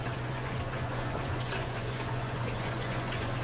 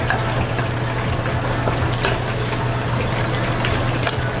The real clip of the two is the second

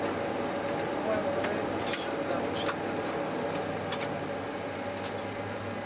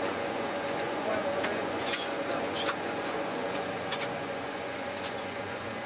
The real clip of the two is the first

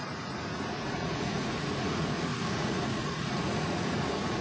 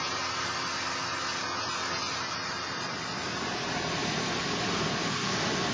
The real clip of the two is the second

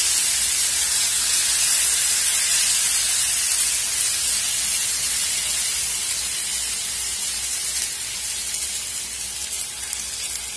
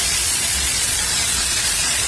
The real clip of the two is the first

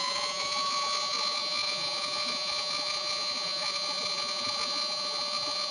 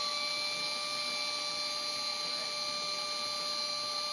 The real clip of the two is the second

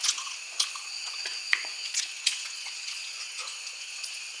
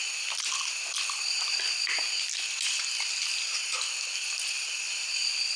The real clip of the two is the second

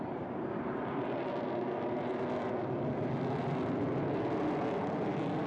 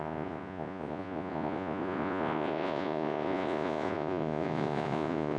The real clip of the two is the first